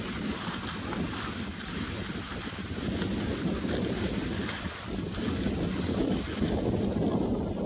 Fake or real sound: real